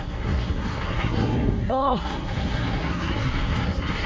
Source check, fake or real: fake